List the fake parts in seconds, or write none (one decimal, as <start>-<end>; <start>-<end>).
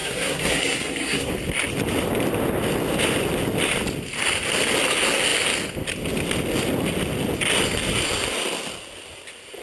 0.0-1.3